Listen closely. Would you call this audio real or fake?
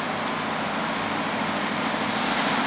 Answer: real